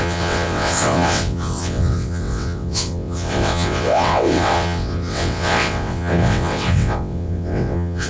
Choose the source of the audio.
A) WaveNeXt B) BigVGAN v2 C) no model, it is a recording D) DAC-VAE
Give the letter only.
A